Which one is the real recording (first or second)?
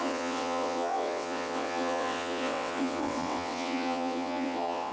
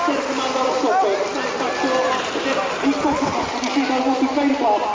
second